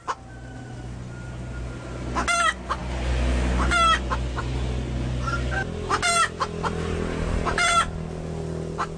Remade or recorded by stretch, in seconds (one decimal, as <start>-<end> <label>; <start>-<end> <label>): 0.0-9.0 recorded